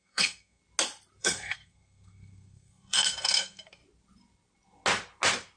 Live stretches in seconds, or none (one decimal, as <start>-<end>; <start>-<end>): 0.6-1.2; 3.8-5.6